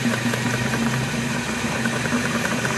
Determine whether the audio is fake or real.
fake